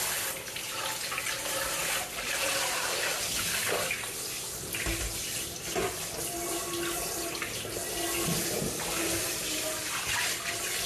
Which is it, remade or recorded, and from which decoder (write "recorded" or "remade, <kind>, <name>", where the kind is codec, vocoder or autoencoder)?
recorded